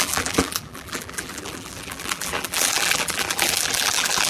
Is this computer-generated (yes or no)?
yes